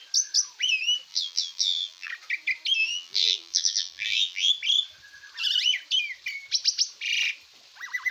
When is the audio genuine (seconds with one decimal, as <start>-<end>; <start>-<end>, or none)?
0.0-1.1; 2.1-2.8; 4.5-8.1